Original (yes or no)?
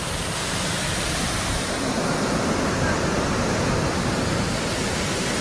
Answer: yes